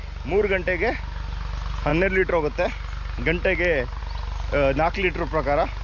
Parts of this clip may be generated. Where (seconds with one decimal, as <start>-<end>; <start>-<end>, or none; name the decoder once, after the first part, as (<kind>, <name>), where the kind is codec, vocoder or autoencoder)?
none